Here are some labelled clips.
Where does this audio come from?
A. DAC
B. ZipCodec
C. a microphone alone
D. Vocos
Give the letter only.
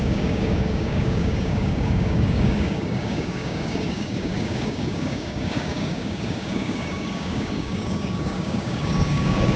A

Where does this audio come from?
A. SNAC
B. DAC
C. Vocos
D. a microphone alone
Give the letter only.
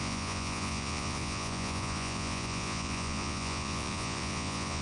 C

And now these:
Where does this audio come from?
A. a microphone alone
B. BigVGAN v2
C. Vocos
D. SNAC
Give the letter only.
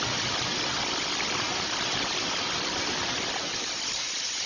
A